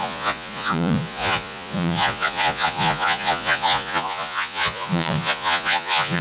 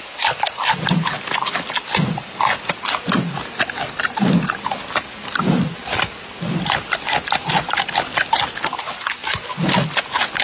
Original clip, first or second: second